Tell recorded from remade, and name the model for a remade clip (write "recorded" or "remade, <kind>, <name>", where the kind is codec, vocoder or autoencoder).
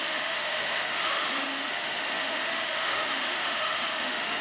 remade, autoencoder, DAC-VAE